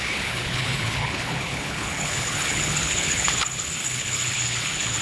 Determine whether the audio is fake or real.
fake